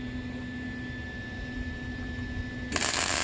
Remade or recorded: recorded